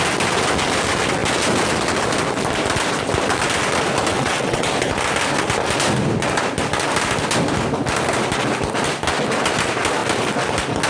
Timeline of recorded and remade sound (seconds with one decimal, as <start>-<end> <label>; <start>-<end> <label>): 0.0-4.1 recorded; 4.1-4.7 remade; 4.7-10.9 recorded